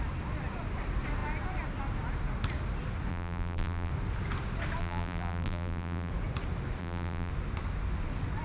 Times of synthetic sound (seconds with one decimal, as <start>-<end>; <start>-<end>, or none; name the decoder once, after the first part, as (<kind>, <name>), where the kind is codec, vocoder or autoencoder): 3.1-3.9 (vocoder, BigVGAN v2); 4.8-6.1; 6.8-7.3